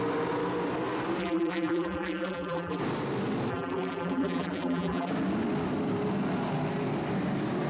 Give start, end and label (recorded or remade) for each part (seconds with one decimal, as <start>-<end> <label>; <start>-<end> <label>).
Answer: 0.0-1.2 recorded; 1.2-2.8 remade; 2.8-3.5 recorded; 3.5-5.1 remade; 5.1-7.7 recorded